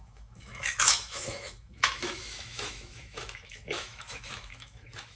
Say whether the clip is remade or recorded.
remade